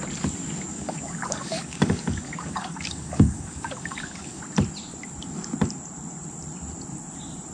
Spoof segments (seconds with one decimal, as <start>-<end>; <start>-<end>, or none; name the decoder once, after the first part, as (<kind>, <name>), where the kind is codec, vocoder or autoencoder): 0.7-4.4 (codec, DAC)